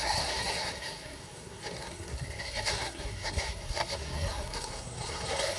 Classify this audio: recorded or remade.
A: remade